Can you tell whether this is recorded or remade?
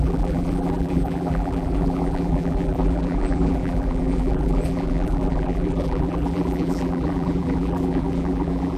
remade